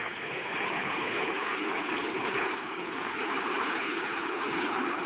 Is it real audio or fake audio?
fake